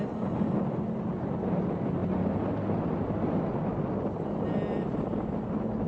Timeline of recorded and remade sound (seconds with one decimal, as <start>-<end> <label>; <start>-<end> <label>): 0.0-5.9 recorded